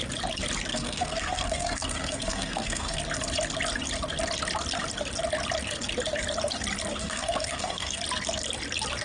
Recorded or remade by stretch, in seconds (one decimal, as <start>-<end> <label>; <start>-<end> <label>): 0.0-0.7 recorded; 0.7-3.0 remade; 3.0-7.0 recorded; 7.0-8.0 remade; 8.0-9.0 recorded